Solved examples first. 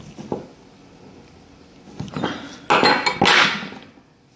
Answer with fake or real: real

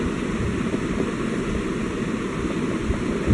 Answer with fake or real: real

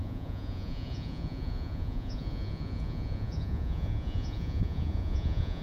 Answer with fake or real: fake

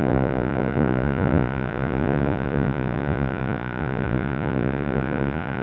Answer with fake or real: fake